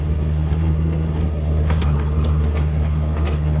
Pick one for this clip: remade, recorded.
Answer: remade